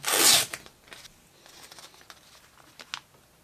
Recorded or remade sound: recorded